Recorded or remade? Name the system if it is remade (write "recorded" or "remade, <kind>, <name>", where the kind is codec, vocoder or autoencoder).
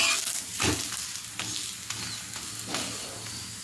recorded